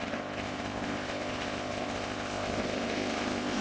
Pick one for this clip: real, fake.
fake